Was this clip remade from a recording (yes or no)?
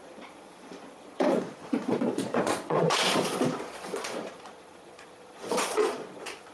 yes